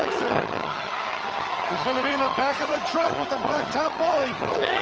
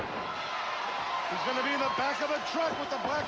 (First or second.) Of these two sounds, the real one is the second